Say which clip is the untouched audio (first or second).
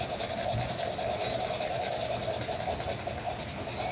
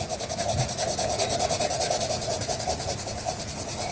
first